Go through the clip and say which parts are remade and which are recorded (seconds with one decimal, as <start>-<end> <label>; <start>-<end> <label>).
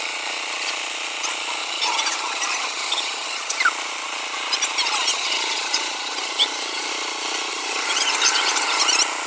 0.0-1.6 recorded; 1.6-3.6 remade; 3.6-5.1 recorded; 5.1-6.9 remade; 6.9-7.5 recorded; 7.5-8.8 remade; 8.8-9.3 recorded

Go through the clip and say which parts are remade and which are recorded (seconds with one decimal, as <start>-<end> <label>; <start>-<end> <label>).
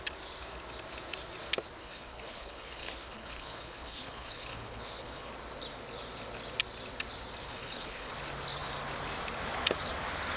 0.0-1.8 recorded; 1.8-5.3 remade; 5.3-7.4 recorded; 7.4-8.1 remade; 8.1-10.4 recorded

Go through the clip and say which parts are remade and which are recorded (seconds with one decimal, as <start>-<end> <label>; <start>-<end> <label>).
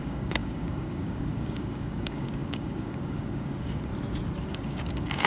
0.0-3.9 remade; 3.9-4.5 recorded; 4.5-5.3 remade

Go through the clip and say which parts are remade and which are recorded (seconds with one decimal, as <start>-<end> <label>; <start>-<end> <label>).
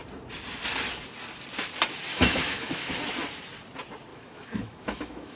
0.0-2.1 recorded; 2.1-2.9 remade; 2.9-4.1 recorded; 4.1-5.4 remade